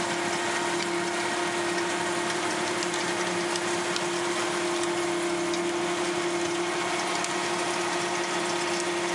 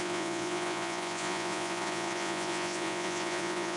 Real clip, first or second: first